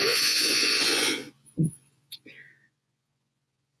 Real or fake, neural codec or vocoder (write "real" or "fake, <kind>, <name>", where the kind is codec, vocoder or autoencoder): fake, vocoder, Vocos